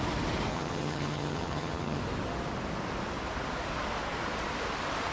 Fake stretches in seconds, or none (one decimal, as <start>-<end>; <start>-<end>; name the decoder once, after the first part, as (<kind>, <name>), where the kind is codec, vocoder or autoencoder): 0.5-2.0 (vocoder, HiFi-GAN)